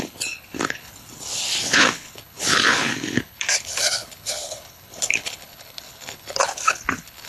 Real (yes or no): no